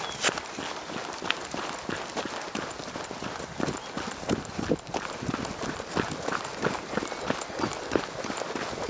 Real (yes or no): yes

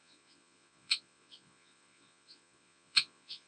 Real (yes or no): no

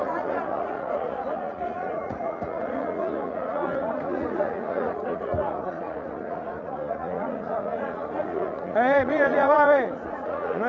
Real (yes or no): no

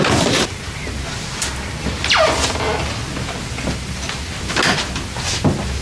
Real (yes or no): yes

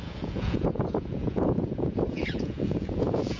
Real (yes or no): no